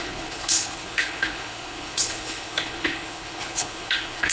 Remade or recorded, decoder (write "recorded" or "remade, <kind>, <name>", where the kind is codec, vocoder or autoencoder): remade, codec, HILCodec